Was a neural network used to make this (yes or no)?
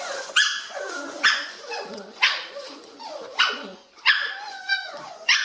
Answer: yes